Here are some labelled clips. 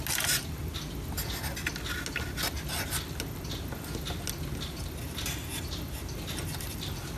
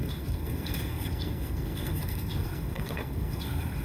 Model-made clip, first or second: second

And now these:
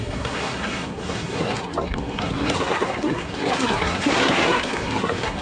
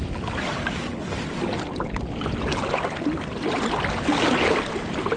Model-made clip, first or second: first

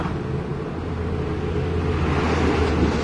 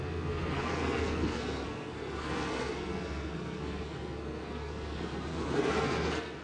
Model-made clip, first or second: second